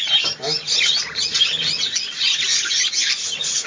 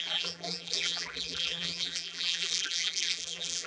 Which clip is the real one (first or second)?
first